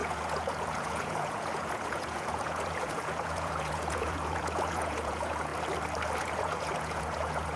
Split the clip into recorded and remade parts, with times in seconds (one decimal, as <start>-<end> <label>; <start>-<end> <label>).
0.0-5.5 remade; 5.5-6.2 recorded; 6.2-7.6 remade